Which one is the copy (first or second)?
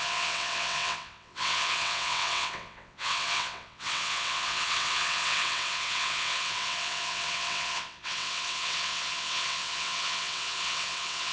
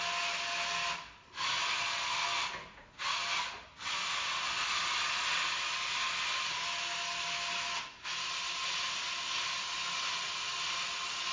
first